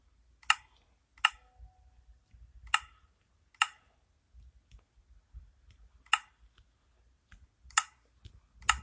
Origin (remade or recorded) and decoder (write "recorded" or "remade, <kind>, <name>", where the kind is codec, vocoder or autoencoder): recorded